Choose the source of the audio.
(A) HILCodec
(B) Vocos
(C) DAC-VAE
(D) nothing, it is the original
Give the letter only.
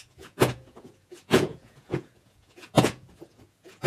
B